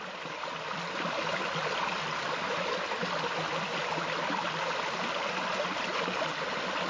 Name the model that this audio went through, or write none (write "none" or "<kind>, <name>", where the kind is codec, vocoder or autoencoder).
none